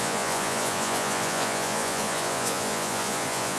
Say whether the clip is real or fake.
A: fake